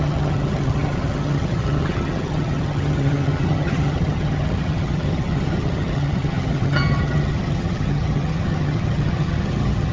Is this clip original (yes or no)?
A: no